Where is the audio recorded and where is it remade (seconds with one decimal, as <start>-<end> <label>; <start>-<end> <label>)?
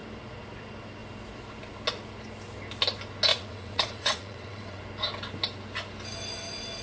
0.0-3.3 recorded; 3.3-4.8 remade; 4.8-6.8 recorded